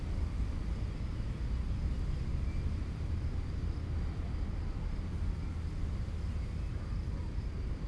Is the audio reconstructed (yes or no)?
no